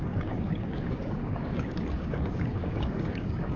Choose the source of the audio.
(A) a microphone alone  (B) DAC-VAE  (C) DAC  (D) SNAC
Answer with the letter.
C